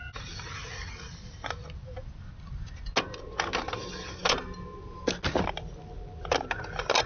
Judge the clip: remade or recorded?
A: recorded